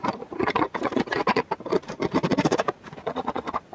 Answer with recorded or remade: remade